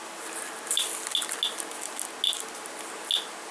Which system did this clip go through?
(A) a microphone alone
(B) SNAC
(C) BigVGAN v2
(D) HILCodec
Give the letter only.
A